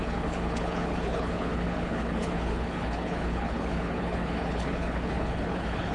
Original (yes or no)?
no